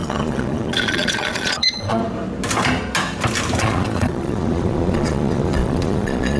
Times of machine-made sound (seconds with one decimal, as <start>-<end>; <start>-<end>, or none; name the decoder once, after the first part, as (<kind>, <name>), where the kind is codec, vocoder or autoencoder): 0.0-2.0 (vocoder, Vocos); 3.6-6.4